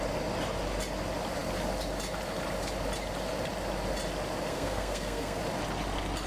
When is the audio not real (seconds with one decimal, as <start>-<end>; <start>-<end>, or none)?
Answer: 4.5-5.4

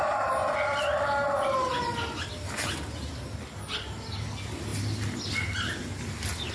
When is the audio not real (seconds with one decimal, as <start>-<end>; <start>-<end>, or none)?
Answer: none

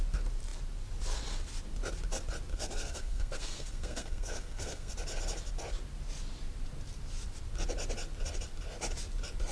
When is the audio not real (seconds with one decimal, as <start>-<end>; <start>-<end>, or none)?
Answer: 2.5-4.9

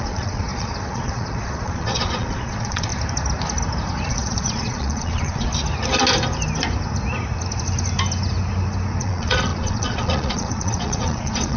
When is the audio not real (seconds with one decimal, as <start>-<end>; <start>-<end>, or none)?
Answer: 0.0-2.9; 4.1-5.5; 9.0-11.6

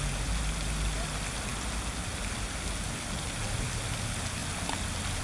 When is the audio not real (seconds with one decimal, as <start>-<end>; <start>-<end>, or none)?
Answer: none